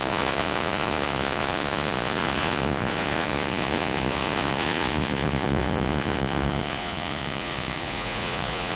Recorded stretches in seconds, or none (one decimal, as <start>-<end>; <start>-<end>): none